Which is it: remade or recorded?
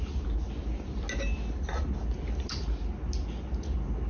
recorded